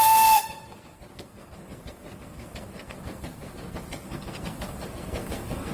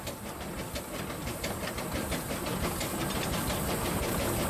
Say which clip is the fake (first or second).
first